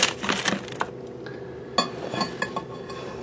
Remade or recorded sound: recorded